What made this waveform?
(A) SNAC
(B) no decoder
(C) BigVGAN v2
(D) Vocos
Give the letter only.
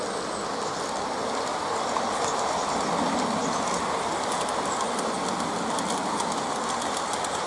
B